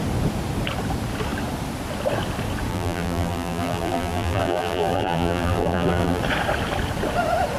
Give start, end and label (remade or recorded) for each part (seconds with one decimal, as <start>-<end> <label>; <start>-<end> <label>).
0.0-2.7 recorded; 2.7-6.2 remade; 6.2-7.6 recorded